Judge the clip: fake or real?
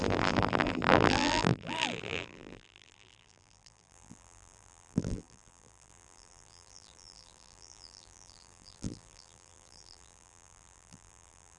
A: fake